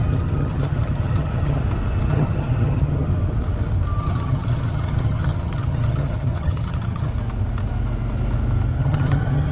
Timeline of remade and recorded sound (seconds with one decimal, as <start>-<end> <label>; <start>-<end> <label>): 0.0-1.6 remade; 1.6-2.1 recorded; 2.1-3.1 remade; 3.1-4.0 recorded; 4.0-7.1 remade; 7.1-8.8 recorded; 8.8-9.5 remade